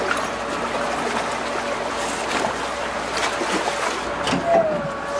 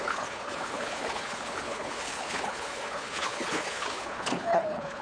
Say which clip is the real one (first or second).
first